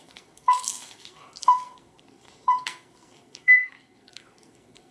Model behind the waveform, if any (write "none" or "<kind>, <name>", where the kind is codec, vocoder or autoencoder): codec, SNAC